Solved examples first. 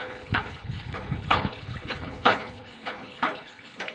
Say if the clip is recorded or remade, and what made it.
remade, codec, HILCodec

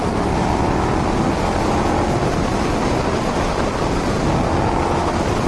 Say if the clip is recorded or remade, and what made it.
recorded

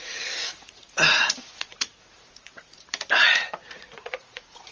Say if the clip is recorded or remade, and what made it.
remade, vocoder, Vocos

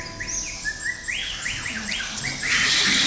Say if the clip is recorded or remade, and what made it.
recorded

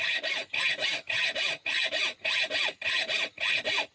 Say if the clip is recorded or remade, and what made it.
recorded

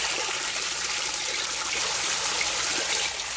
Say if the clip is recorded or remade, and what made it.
remade, vocoder, BigVGAN v2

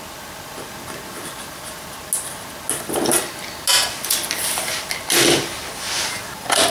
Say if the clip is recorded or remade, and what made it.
recorded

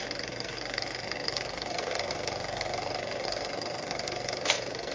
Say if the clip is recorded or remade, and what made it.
remade, codec, SNAC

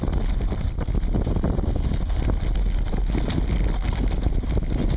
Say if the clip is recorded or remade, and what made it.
recorded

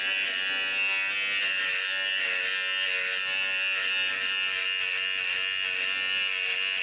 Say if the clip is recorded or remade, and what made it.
recorded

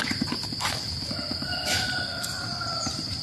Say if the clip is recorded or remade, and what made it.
remade, vocoder, BigVGAN v2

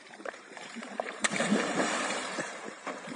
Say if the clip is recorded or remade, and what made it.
remade, vocoder, BigVGAN v2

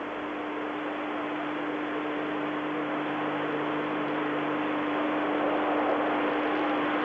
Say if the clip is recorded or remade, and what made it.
recorded